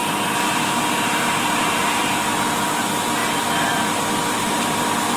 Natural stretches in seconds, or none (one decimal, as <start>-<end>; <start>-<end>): 2.0-5.2